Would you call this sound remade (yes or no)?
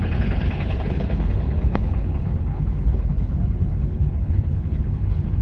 yes